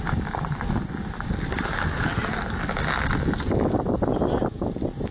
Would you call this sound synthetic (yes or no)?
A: no